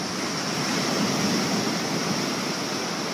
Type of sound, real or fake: real